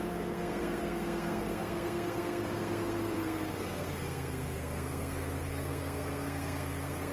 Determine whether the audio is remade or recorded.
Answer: remade